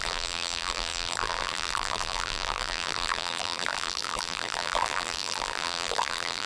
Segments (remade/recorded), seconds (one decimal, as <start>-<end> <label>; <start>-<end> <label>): 0.0-6.5 remade